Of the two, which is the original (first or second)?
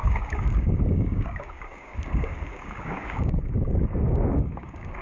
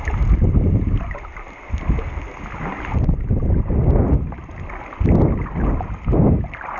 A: second